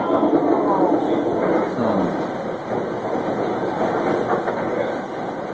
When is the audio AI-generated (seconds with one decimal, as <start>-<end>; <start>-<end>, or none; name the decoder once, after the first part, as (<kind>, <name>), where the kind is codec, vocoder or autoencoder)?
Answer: none